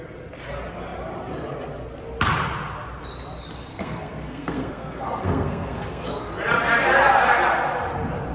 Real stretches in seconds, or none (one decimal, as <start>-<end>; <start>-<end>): 0.0-3.7; 6.3-8.3